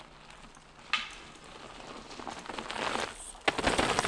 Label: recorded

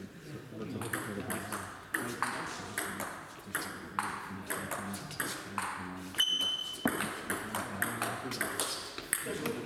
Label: recorded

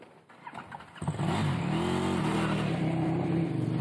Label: recorded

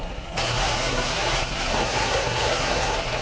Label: remade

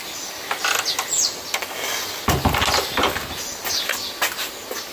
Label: recorded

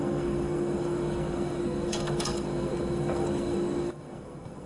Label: remade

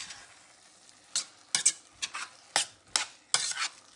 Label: recorded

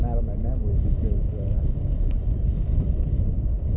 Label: recorded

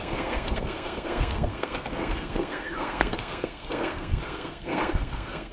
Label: remade